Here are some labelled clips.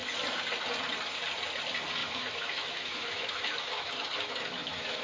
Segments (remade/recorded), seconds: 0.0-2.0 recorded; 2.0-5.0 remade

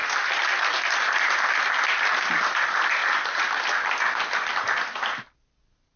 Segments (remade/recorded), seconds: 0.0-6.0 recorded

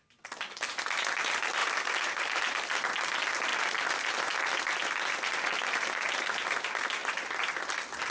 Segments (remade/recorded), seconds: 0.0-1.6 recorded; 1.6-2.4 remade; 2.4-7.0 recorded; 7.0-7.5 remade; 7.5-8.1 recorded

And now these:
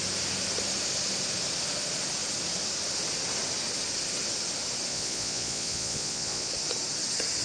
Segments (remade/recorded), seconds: 0.0-4.9 recorded; 4.9-6.5 remade; 6.5-7.4 recorded